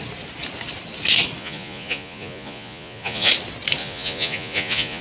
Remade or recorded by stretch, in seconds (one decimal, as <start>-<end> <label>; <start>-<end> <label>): 0.0-1.4 recorded; 1.4-3.3 remade; 3.3-3.8 recorded; 3.8-5.0 remade